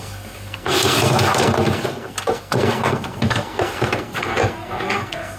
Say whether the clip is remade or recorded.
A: remade